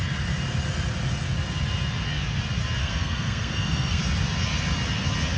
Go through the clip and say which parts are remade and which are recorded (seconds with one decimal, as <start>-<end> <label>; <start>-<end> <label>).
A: 0.0-2.8 recorded; 2.8-4.0 remade; 4.0-5.4 recorded